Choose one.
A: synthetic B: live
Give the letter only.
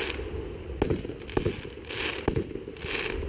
B